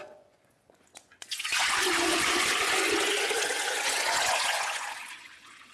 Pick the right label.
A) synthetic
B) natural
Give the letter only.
A